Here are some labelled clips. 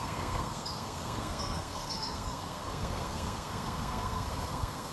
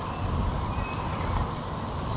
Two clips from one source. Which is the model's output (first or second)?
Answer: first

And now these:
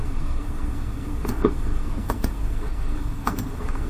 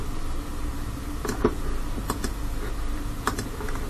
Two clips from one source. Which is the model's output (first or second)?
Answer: first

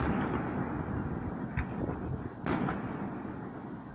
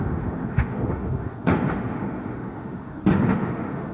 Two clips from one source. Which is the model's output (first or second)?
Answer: second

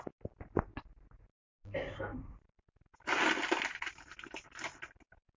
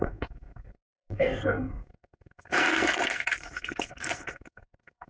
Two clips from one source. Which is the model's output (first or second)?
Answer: second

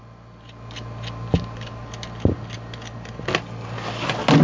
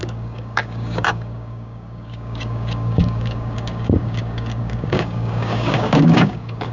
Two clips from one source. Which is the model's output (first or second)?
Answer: second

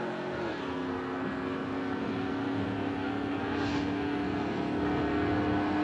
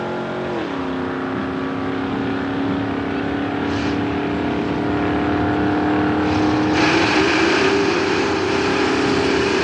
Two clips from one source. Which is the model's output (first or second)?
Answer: first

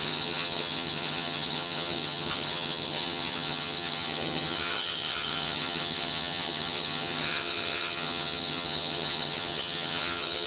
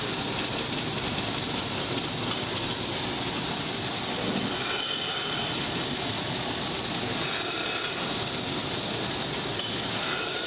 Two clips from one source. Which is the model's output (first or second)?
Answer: first